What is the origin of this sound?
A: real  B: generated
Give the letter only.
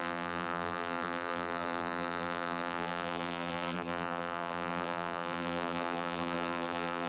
B